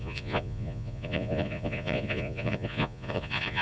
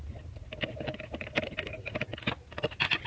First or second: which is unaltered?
second